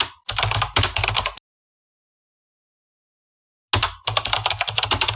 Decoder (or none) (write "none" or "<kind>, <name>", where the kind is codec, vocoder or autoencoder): none